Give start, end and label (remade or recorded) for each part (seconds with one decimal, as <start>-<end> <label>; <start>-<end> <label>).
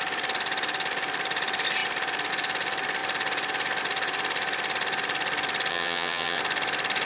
0.0-5.7 recorded; 5.7-6.4 remade; 6.4-7.1 recorded